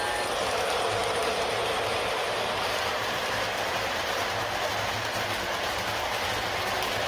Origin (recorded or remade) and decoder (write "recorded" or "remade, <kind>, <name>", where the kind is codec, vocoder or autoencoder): recorded